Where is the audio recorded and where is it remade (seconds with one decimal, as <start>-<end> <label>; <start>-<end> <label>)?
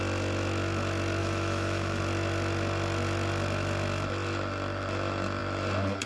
0.0-1.2 recorded; 1.2-2.0 remade; 2.0-6.1 recorded